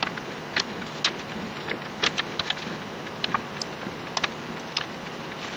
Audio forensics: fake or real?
real